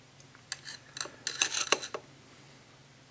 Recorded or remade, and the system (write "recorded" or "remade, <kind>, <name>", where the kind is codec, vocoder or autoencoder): recorded